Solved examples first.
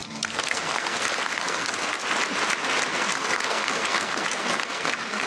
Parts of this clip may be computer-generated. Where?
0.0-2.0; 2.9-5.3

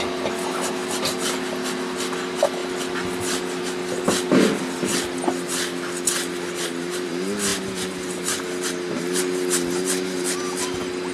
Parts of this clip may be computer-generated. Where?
none

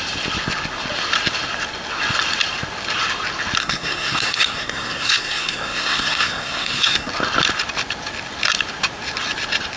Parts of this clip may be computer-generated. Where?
3.6-7.1

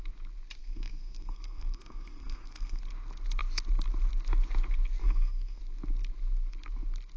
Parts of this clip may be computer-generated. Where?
0.6-2.8; 5.0-5.6

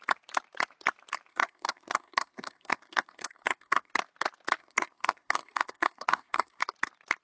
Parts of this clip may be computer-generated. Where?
1.3-3.9; 4.6-6.6

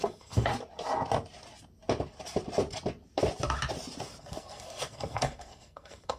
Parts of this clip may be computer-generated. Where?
0.0-0.5; 4.2-6.2